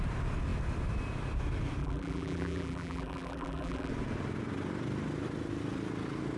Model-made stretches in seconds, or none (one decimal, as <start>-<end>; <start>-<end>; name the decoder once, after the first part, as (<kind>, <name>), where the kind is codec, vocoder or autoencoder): 1.8-3.9 (vocoder, BigVGAN v2)